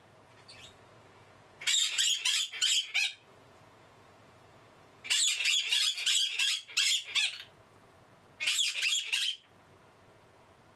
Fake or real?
fake